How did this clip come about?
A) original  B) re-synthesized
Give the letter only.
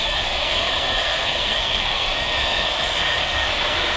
B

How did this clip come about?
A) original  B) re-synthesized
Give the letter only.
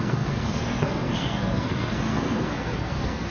B